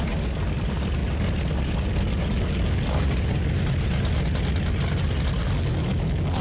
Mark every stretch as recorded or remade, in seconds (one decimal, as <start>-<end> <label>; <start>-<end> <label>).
0.0-6.4 recorded